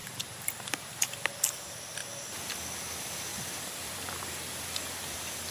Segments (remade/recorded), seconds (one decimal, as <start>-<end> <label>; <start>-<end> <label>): 0.0-1.3 remade; 1.3-3.3 recorded; 3.3-4.2 remade; 4.2-5.5 recorded